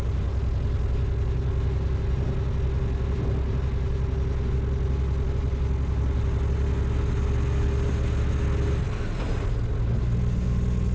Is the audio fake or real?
real